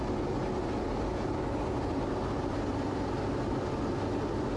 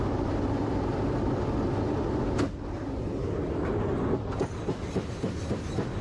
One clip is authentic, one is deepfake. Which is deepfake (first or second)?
second